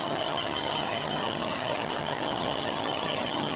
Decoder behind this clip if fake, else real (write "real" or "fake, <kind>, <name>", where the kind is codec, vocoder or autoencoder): fake, vocoder, HiFi-GAN